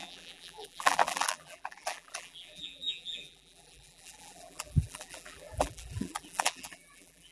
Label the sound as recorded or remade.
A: remade